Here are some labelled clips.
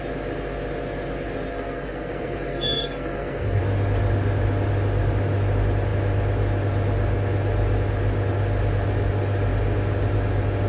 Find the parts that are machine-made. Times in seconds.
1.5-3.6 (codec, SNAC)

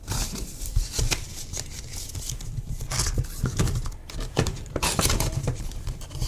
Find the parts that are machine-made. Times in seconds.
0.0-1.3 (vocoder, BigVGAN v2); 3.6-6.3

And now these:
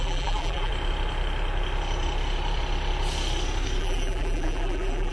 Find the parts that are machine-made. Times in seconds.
0.0-0.7 (vocoder, BigVGAN v2); 3.8-5.1

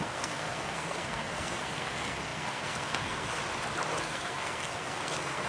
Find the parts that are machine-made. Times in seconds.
0.0-3.4 (codec, SNAC); 4.0-5.5

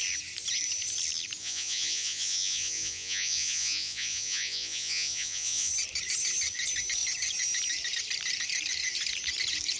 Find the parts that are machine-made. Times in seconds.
1.4-5.7 (vocoder, Vocos)

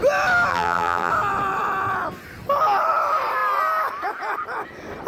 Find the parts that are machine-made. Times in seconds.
0.5-1.1 (vocoder, BigVGAN v2)